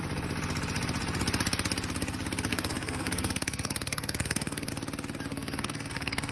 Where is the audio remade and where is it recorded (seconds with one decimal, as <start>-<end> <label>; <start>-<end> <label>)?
0.0-2.5 recorded; 2.5-4.7 remade; 4.7-5.3 recorded; 5.3-6.3 remade